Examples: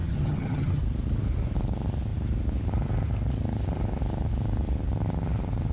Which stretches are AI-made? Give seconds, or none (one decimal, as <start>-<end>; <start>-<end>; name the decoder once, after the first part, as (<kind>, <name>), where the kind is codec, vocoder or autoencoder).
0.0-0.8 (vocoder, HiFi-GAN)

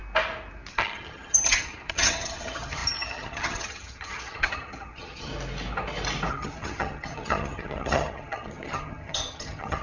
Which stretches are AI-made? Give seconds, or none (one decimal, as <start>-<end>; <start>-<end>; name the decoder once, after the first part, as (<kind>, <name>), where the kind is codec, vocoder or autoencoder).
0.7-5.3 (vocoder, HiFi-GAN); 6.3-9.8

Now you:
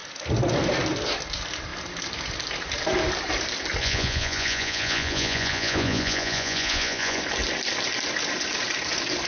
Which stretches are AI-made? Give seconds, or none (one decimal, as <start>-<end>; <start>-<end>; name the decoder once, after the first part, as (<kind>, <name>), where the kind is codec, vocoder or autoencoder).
3.8-7.2 (vocoder, Vocos)

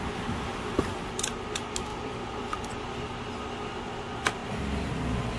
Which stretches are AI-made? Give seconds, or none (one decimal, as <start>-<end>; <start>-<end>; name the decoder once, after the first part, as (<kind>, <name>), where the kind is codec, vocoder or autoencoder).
1.9-2.6 (vocoder, BigVGAN v2); 4.4-4.9

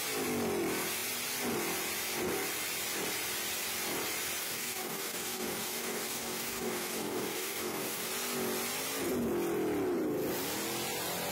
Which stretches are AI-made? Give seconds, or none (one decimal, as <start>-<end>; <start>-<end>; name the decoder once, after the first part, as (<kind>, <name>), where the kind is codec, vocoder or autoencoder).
4.4-8.1 (codec, DAC)

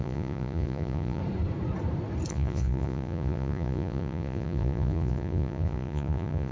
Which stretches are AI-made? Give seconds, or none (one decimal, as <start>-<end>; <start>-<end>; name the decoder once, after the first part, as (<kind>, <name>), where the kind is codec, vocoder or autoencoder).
0.0-1.2 (vocoder, Vocos); 2.3-6.5

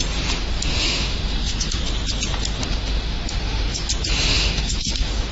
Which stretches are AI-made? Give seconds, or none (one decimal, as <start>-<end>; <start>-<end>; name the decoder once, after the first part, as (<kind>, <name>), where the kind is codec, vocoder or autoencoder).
0.4-1.8 (autoencoder, DAC-VAE); 2.6-3.9; 4.3-5.3